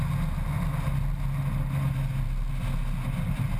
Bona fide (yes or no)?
yes